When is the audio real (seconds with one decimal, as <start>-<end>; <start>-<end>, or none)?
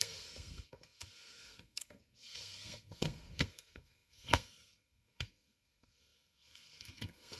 none